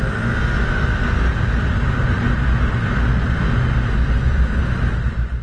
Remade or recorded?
recorded